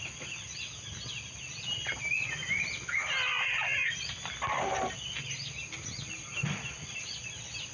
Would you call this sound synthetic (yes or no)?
no